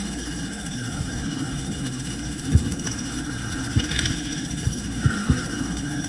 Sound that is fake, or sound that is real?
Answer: fake